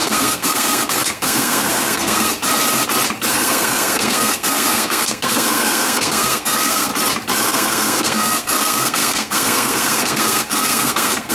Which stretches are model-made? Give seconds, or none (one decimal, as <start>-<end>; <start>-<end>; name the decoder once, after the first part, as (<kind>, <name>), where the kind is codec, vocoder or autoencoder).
0.0-2.4 (codec, SNAC); 3.3-6.9; 7.4-11.3